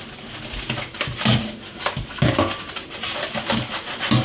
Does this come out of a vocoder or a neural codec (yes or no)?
no